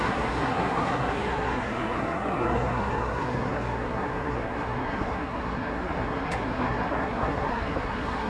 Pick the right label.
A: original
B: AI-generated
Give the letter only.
B